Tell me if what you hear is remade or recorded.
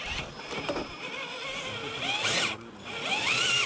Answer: recorded